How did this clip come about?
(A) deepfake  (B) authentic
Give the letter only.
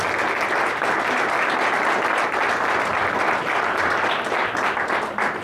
B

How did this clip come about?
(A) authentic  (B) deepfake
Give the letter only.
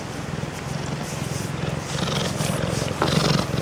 A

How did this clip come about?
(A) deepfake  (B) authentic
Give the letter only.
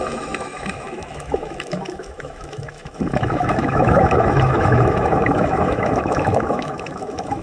A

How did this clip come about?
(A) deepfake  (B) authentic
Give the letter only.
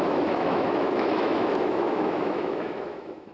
A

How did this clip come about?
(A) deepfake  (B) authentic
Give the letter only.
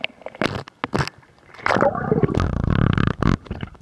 B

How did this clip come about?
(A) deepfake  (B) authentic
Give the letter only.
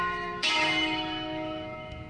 A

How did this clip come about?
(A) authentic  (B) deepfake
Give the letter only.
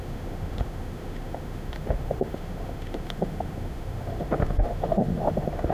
B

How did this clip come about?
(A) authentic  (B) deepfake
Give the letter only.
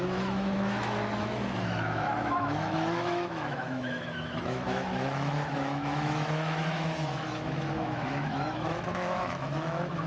B